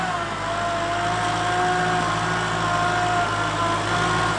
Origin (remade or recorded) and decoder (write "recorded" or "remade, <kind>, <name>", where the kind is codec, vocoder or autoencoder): recorded